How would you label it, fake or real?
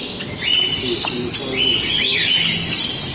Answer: real